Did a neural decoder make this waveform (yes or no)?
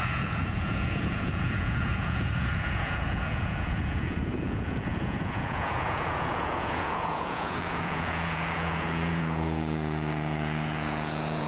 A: yes